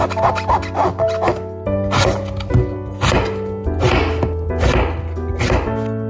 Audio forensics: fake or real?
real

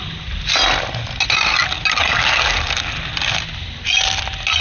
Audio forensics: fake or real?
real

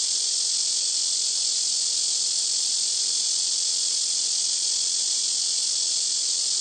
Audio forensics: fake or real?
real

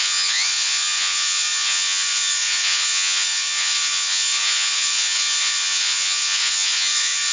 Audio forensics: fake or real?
fake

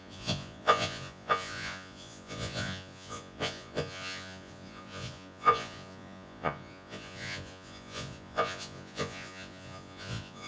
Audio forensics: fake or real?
fake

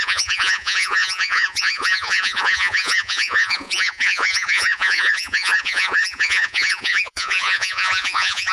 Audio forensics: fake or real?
fake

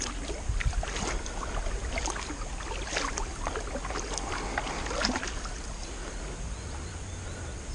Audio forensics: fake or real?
real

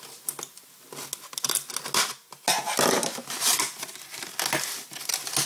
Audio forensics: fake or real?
real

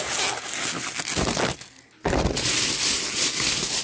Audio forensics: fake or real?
real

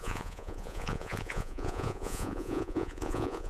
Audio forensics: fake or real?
fake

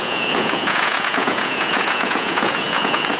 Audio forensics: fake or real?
fake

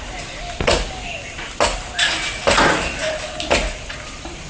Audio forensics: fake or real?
real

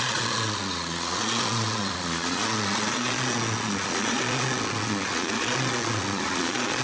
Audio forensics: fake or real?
fake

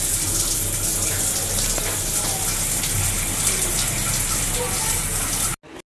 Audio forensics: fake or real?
real